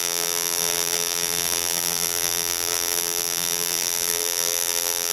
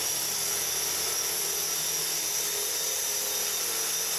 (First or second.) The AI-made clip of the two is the first